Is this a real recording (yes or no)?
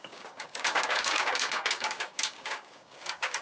no